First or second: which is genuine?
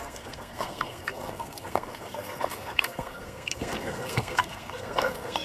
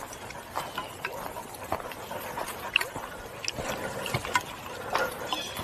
second